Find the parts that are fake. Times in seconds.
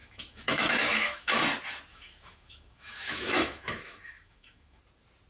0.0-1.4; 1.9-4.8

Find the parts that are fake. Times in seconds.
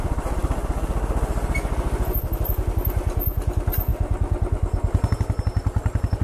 none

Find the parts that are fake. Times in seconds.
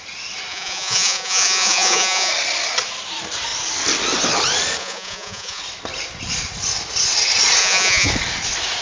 0.5-2.3; 4.8-5.6; 7.6-8.1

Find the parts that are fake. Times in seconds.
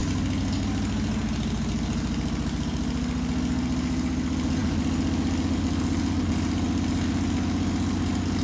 none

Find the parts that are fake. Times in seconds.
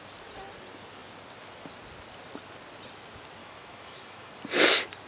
3.4-4.3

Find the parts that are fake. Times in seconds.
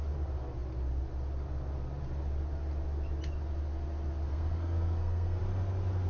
4.3-5.4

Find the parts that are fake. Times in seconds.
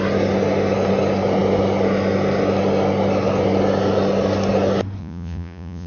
5.0-5.9